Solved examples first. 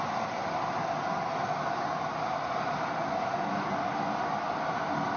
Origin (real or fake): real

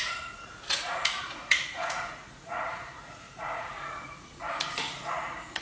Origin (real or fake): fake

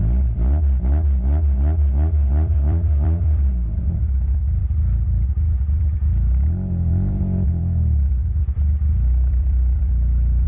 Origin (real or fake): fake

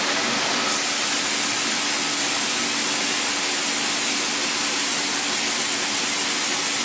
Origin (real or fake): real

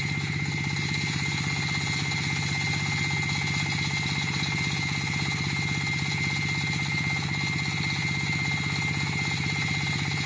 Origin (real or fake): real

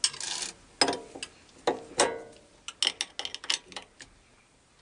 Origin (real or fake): real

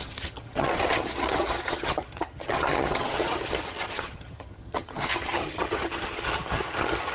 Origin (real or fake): fake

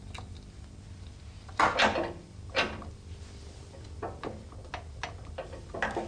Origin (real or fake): real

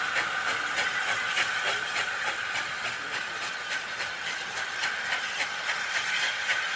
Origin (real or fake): real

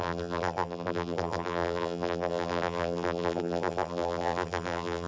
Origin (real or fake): fake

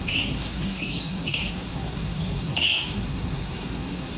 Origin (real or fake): fake